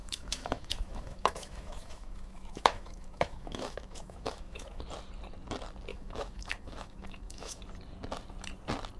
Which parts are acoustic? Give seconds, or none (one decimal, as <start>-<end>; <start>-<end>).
4.8-5.9; 7.6-9.0